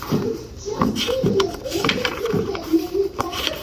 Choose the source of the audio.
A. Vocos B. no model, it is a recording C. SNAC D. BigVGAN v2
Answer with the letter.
D